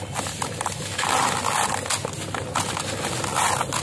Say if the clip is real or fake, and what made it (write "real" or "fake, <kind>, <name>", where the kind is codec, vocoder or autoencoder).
real